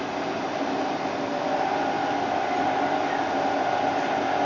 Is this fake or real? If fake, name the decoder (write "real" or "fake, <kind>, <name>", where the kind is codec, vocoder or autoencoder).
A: real